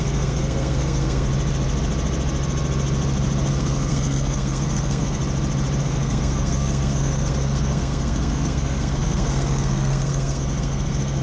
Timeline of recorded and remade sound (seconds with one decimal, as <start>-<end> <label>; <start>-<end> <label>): 0.0-1.3 remade; 1.3-3.5 recorded; 3.5-5.2 remade; 5.2-5.8 recorded; 5.8-11.2 remade